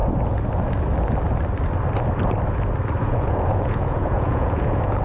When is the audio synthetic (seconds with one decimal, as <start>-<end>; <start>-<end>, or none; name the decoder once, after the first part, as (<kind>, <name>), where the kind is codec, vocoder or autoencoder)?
3.0-5.0 (vocoder, Vocos)